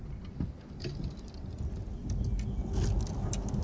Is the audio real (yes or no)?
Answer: yes